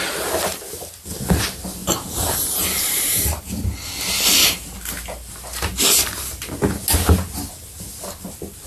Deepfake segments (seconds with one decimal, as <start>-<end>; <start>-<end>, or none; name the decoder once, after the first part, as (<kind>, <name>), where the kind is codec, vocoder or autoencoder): 1.8-3.4 (vocoder, BigVGAN v2)